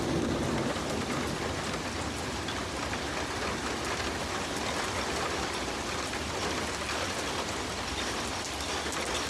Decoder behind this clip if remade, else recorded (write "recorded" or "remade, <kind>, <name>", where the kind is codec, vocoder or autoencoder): recorded